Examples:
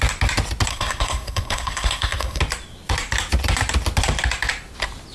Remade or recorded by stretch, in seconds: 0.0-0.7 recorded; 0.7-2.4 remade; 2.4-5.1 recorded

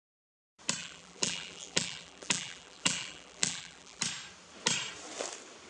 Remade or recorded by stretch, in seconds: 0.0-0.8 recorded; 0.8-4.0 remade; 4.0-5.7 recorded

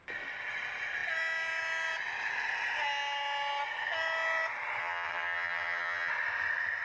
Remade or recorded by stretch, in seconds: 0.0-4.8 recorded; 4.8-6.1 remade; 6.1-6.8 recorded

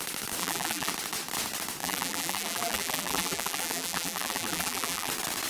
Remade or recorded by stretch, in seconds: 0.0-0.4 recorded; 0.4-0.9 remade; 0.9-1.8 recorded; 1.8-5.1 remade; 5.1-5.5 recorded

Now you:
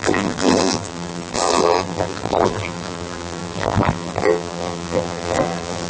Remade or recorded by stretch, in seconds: 0.0-5.9 remade

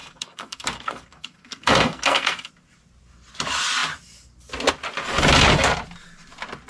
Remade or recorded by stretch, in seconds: 0.0-2.5 remade; 2.5-6.7 recorded